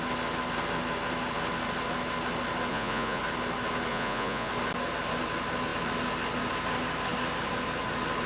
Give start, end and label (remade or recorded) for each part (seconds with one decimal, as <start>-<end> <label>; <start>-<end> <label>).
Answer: 0.0-2.7 recorded; 2.7-3.2 remade; 3.2-3.9 recorded; 3.9-4.5 remade; 4.5-8.3 recorded